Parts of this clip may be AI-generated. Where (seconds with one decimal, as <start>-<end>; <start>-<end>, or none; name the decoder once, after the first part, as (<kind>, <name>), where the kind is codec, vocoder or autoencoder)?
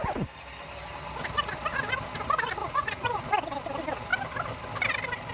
2.6-3.2 (vocoder, Vocos)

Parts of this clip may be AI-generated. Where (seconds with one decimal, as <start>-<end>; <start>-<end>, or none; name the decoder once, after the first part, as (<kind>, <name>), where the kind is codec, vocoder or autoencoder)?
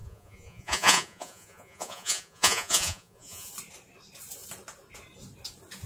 0.0-3.5 (vocoder, Vocos)